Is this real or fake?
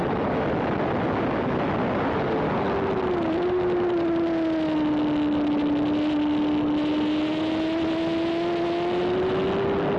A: real